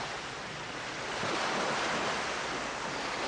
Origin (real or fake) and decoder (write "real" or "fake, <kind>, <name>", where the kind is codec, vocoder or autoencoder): real